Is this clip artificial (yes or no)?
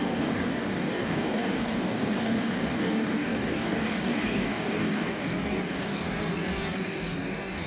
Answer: yes